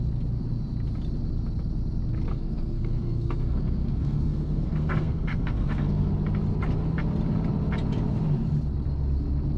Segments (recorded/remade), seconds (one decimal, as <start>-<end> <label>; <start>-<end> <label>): 0.0-2.3 recorded; 2.3-6.1 remade; 6.1-9.6 recorded